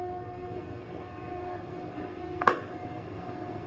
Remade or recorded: remade